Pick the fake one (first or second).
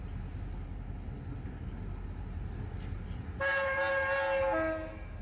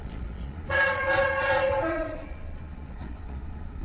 second